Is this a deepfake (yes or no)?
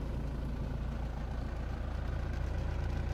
no